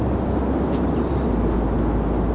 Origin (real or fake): real